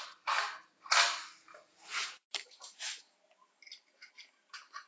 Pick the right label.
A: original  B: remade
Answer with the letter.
A